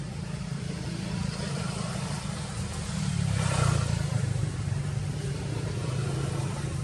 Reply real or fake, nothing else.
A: fake